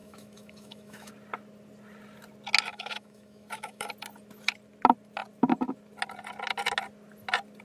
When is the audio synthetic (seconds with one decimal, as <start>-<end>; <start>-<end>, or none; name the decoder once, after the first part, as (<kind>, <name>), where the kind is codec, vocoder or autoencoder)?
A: 0.0-1.1 (autoencoder, DAC-VAE); 2.7-3.9